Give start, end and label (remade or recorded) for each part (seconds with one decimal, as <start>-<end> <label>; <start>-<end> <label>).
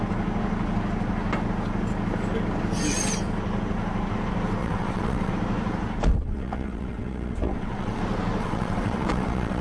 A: 0.0-4.6 recorded; 4.6-5.3 remade; 5.3-6.1 recorded; 6.1-8.0 remade; 8.0-8.4 recorded; 8.4-9.6 remade